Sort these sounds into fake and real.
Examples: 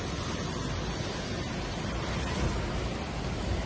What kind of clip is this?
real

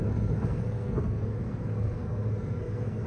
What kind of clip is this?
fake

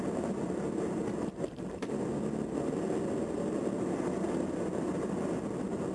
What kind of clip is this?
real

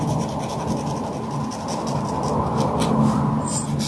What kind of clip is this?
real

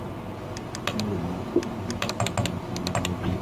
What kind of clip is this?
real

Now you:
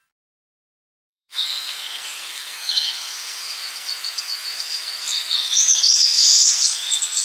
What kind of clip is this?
fake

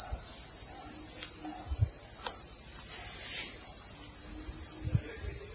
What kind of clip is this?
real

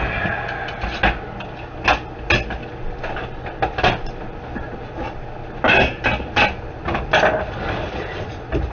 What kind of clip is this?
real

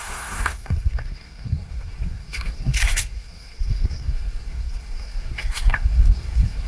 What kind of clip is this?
fake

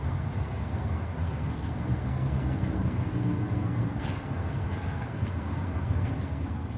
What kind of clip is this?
fake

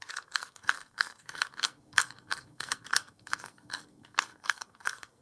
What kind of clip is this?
fake